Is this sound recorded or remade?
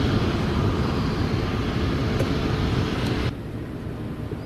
recorded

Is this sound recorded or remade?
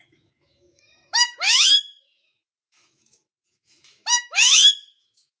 remade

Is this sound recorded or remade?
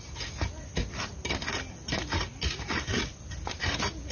recorded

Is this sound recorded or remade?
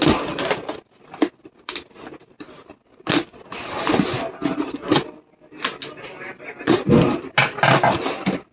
recorded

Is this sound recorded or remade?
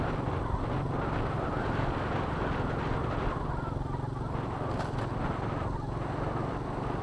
recorded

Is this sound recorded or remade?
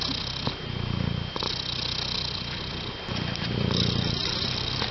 recorded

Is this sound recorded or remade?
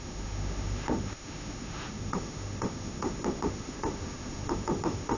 remade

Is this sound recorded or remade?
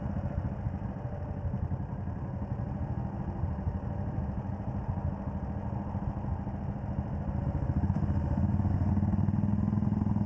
recorded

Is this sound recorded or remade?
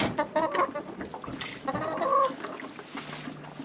recorded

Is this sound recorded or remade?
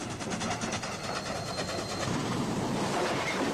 remade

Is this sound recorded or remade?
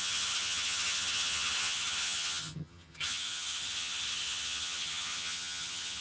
remade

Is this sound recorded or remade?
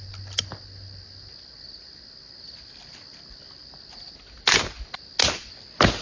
recorded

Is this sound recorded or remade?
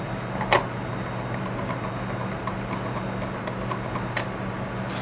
recorded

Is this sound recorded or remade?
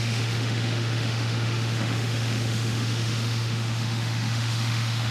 remade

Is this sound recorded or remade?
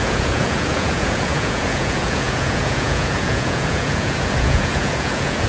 remade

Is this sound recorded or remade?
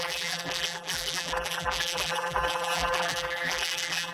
remade